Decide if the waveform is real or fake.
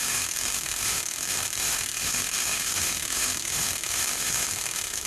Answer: fake